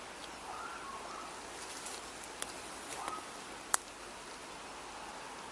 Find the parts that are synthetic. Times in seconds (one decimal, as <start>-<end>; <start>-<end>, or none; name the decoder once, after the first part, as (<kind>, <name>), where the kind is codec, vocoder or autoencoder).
0.0-0.7 (vocoder, BigVGAN v2); 4.0-4.4